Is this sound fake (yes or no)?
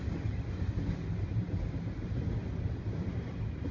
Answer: no